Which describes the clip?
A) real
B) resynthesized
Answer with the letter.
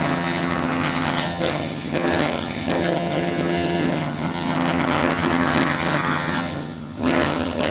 B